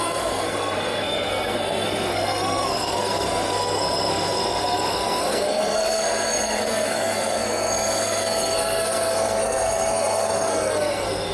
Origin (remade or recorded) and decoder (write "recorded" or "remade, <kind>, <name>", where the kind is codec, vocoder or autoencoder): remade, codec, SNAC